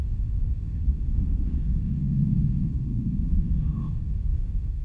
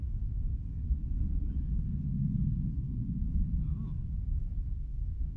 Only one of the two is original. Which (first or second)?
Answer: second